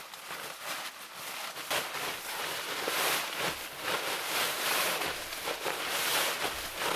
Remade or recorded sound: recorded